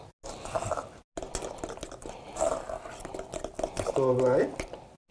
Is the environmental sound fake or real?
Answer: real